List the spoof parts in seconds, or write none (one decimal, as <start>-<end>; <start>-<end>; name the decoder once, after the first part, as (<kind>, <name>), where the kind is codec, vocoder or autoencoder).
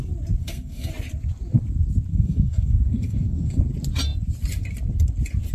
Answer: 0.4-0.9 (codec, SNAC); 2.1-3.6